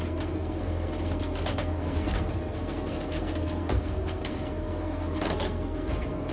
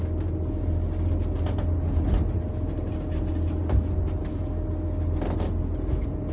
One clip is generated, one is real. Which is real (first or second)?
second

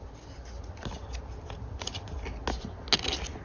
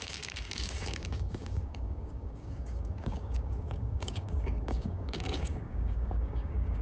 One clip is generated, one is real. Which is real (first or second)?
first